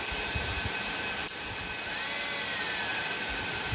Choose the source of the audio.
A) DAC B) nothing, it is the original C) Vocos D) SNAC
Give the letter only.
B